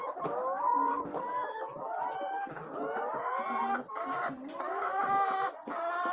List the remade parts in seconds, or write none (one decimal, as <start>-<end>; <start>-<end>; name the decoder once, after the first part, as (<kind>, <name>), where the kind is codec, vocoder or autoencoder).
0.0-1.1 (vocoder, BigVGAN v2); 4.8-6.1